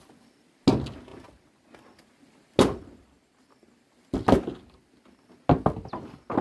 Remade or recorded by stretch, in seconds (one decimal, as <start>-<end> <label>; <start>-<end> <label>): 0.0-6.4 recorded